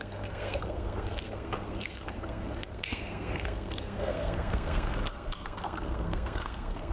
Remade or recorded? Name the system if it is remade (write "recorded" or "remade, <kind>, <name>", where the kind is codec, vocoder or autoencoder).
remade, codec, SNAC